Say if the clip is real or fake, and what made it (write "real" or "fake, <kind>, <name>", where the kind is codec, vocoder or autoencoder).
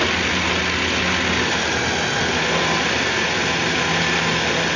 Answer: real